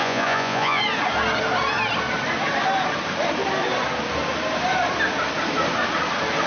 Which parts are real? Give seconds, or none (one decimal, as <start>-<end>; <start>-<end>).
0.8-6.5